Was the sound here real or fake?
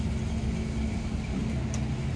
real